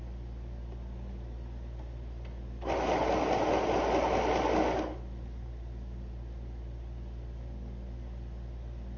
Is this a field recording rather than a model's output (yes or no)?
yes